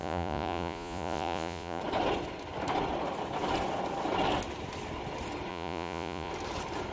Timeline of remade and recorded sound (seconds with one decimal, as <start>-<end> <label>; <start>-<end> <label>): 0.0-1.8 remade; 1.8-5.5 recorded; 5.5-6.3 remade; 6.3-6.9 recorded